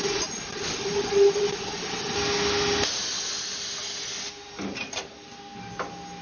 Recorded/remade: recorded